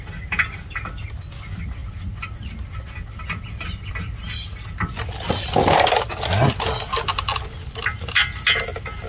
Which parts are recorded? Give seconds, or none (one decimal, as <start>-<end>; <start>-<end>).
0.0-9.1